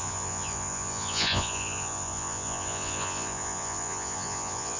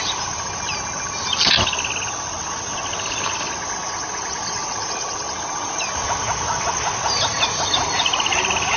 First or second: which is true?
second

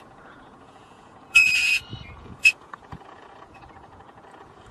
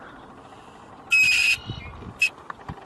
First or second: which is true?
second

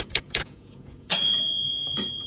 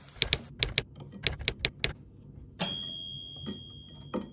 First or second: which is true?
second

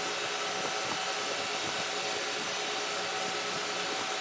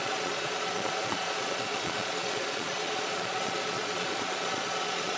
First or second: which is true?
first